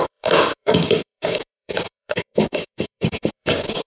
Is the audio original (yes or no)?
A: no